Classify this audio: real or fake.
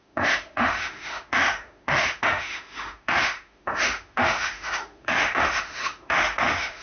fake